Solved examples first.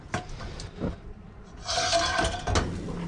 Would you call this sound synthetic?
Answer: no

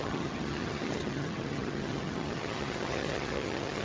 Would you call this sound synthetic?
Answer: yes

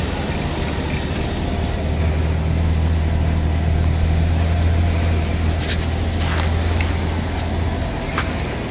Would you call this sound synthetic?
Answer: no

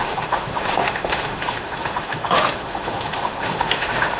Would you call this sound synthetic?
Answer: yes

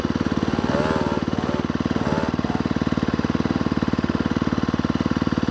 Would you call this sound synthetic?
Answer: no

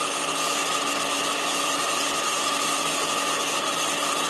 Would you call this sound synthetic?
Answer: no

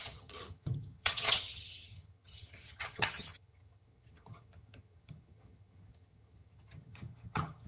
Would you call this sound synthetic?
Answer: yes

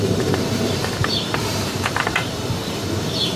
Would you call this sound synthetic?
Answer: yes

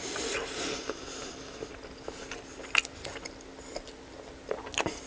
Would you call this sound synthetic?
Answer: no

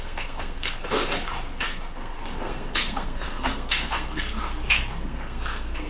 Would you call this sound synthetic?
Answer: yes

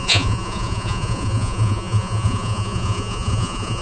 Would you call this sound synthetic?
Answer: yes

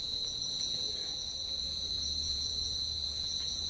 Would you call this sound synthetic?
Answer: yes